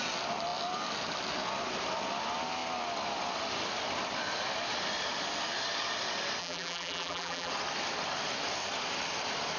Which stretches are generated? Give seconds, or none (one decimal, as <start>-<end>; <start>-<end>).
6.4-7.5